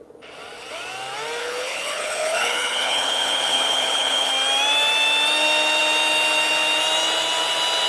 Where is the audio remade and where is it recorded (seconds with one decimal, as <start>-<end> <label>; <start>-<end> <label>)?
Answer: 0.0-1.4 recorded; 1.4-4.3 remade; 4.3-7.9 recorded